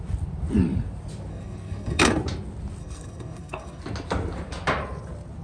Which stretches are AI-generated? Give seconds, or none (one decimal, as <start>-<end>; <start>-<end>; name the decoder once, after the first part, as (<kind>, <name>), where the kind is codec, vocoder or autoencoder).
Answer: 1.3-2.1 (codec, SNAC); 2.8-3.8